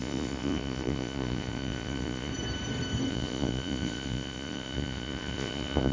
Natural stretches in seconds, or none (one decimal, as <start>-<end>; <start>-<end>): 2.3-3.1